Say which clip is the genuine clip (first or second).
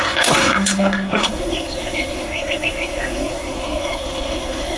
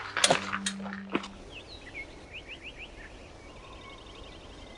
second